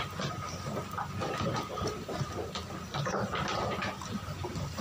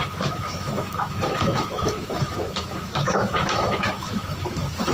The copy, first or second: second